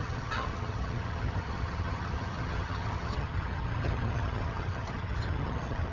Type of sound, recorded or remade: remade